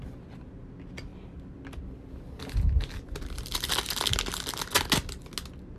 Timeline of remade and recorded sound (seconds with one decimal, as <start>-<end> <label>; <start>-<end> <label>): 0.0-5.8 recorded